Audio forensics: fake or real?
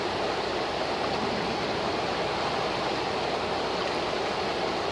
real